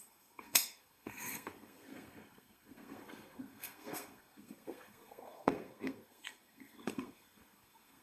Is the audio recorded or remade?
remade